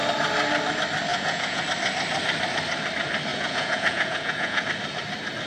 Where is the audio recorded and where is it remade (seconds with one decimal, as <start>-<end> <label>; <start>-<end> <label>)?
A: 0.0-1.1 recorded; 1.1-1.6 remade; 1.6-3.3 recorded; 3.3-4.6 remade; 4.6-5.5 recorded